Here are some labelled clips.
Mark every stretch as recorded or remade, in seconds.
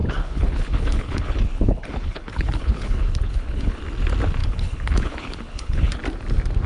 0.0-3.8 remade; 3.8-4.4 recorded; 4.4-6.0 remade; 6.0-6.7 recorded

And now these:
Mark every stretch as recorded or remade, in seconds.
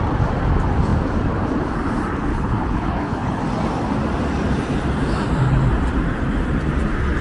0.0-2.3 recorded; 2.3-3.4 remade; 3.4-7.2 recorded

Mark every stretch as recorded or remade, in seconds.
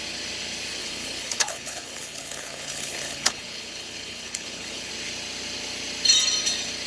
0.0-0.8 recorded; 0.8-4.9 remade; 4.9-6.9 recorded